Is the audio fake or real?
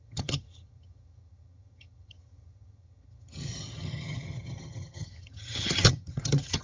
fake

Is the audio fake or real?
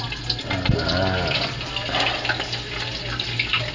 real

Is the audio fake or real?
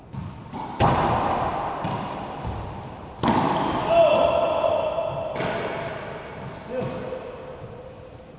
real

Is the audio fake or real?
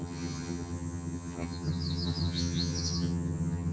fake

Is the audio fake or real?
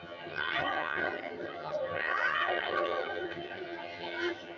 fake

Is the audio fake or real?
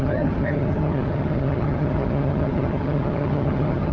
fake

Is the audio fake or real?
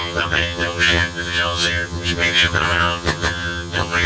fake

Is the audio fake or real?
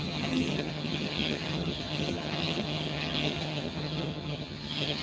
fake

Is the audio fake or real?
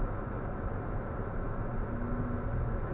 real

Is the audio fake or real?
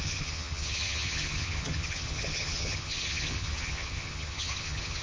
fake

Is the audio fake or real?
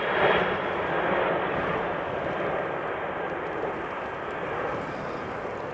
real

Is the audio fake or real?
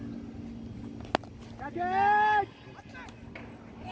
real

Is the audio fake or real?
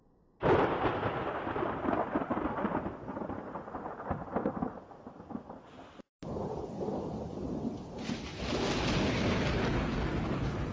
real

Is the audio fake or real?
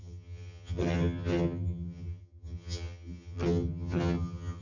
fake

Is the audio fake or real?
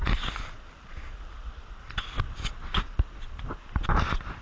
real